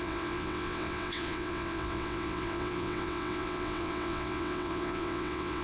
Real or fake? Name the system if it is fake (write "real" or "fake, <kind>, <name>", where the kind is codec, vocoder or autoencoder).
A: fake, vocoder, WaveNeXt